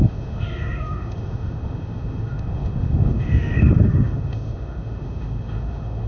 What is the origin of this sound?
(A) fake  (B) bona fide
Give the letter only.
A